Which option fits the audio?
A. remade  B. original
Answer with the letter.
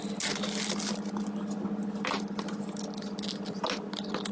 B